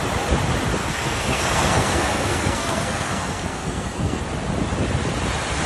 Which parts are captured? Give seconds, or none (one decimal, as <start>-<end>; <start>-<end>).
0.0-0.8; 4.2-5.7